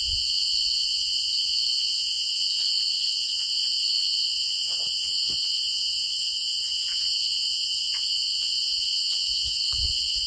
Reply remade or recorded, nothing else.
remade